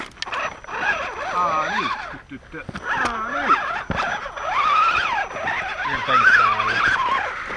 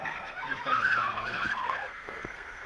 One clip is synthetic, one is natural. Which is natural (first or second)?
first